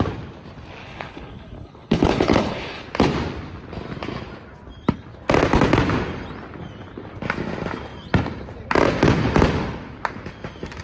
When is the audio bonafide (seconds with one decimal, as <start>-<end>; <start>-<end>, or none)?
0.0-0.8; 2.8-10.8